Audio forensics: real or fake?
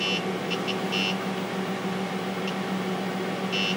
real